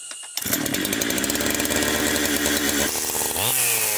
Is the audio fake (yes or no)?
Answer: no